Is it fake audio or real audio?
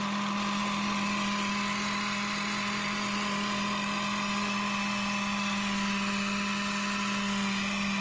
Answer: real